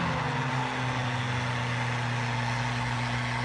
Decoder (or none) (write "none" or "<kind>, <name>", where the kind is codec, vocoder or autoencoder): none